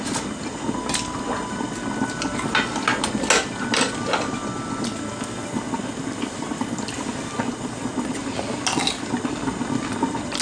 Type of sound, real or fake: real